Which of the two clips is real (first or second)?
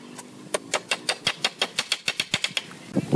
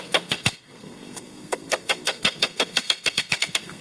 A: first